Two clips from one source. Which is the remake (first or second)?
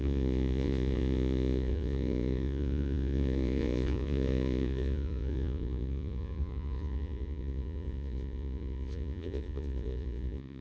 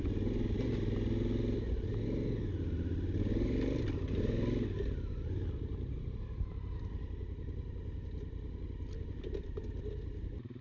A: first